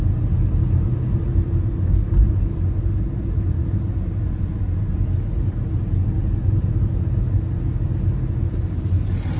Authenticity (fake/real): real